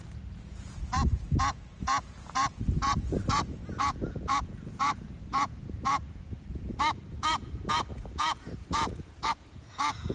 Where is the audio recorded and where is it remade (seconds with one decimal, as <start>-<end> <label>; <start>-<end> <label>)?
0.0-10.1 remade